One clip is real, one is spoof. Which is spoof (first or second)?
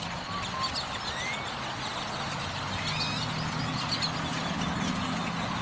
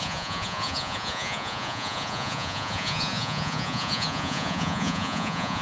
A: second